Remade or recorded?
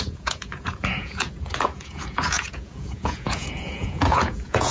remade